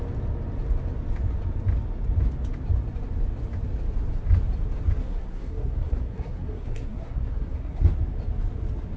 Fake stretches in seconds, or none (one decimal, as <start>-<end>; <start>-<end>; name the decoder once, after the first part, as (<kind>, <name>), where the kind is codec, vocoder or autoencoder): 5.0-7.9 (codec, SNAC)